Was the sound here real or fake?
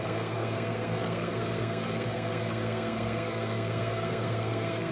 fake